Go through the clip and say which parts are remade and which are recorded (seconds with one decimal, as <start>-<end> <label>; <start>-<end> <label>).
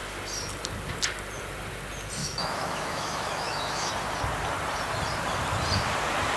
0.0-2.2 recorded; 2.2-3.9 remade; 3.9-6.4 recorded